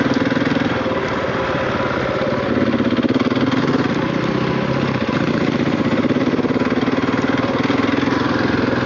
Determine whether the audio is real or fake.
real